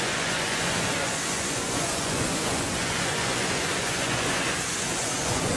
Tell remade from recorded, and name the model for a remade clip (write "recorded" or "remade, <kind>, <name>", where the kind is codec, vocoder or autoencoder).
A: remade, vocoder, Vocos